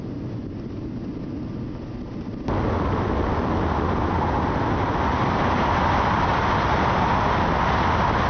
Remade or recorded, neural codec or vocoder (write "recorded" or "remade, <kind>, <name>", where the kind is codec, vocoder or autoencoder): recorded